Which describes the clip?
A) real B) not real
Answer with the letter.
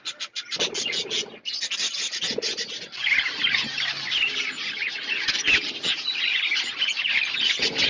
A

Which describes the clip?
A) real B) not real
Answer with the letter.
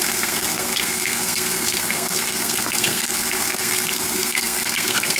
B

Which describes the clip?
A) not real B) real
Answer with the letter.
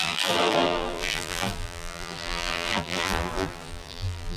A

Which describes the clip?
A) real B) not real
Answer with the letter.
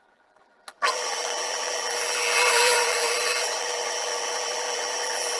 B